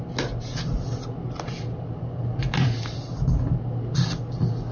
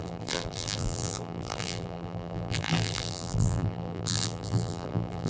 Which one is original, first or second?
first